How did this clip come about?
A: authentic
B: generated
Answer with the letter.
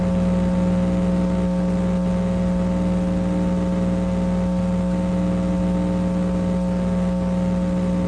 A